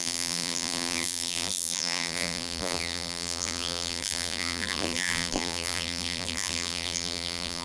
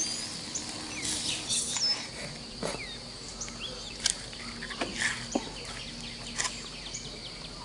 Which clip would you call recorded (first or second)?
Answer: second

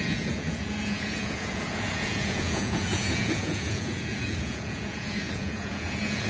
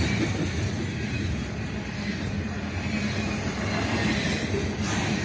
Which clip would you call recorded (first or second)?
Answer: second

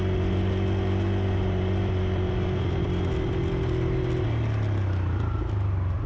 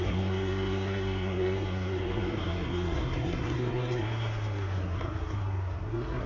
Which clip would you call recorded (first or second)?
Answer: first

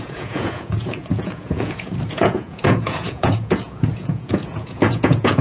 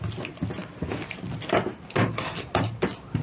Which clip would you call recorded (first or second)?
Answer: second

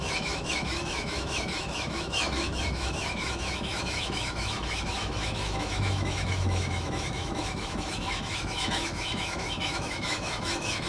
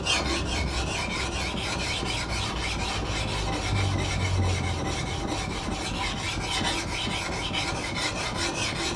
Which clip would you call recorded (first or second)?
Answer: second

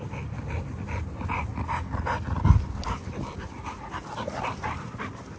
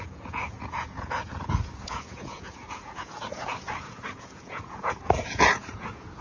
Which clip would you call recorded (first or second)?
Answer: first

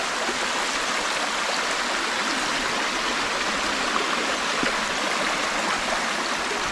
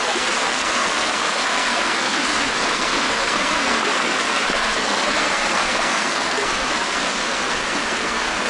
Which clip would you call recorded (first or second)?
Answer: first